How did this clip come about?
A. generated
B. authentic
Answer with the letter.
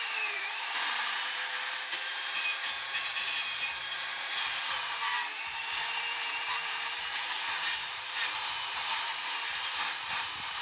A